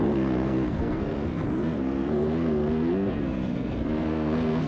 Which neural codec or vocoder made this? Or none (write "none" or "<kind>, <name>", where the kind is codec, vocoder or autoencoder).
codec, SNAC